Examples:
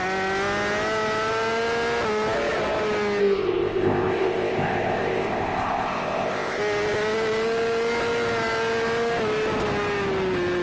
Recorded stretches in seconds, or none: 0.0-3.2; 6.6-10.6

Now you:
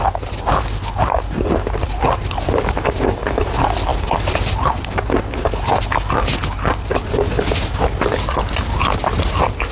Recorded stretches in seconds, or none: 0.0-9.7

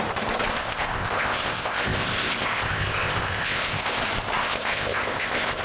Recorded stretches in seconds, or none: 0.0-0.6; 4.0-4.4

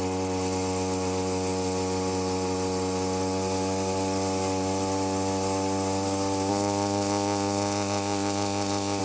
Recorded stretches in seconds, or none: 0.0-6.5